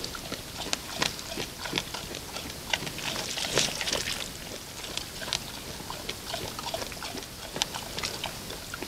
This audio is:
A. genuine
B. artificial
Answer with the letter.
A